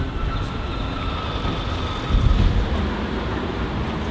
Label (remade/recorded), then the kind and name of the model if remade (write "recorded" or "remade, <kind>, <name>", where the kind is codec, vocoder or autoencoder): recorded